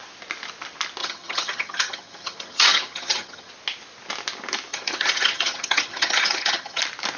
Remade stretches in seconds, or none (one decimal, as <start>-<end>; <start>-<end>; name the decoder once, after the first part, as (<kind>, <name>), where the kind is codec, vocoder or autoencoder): 1.0-3.5 (vocoder, HiFi-GAN); 4.7-6.8